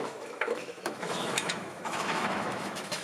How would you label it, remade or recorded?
remade